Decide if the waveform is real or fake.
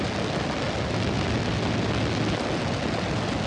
real